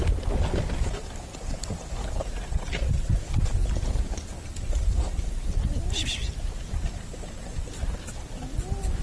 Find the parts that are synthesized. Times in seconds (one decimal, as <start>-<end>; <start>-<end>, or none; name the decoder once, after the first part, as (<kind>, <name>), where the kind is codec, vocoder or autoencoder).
none